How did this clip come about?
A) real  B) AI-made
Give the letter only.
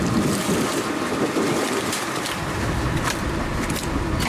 A